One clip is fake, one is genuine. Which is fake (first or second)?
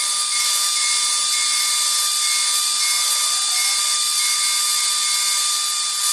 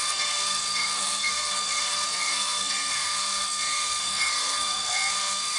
second